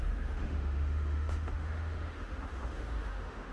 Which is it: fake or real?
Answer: fake